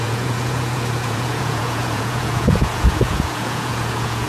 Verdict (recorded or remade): remade